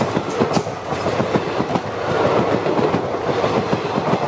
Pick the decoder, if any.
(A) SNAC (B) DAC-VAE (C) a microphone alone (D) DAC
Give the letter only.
C